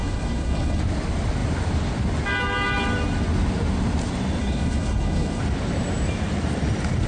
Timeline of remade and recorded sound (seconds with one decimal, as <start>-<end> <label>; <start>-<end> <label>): 0.0-0.8 remade; 0.8-4.4 recorded; 4.4-5.4 remade; 5.4-7.1 recorded